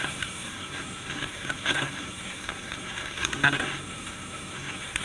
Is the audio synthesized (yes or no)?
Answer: yes